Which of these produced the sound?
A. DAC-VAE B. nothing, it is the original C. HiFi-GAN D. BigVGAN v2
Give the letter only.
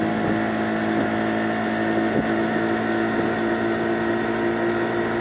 B